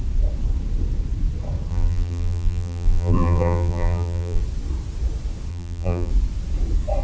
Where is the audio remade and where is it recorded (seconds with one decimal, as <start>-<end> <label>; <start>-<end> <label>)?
0.0-1.7 recorded; 1.7-4.4 remade; 4.4-5.5 recorded; 5.5-6.1 remade; 6.1-7.0 recorded